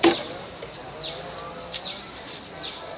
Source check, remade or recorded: recorded